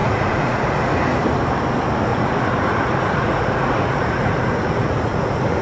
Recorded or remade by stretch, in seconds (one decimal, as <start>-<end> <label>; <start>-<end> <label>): 0.0-0.6 remade; 0.6-2.1 recorded; 2.1-5.6 remade